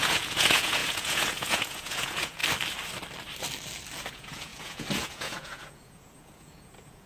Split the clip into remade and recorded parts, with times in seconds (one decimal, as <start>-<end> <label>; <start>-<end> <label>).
0.0-2.4 remade; 2.4-4.1 recorded; 4.1-7.1 remade